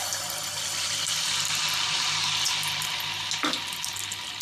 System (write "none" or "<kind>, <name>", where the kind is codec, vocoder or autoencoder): none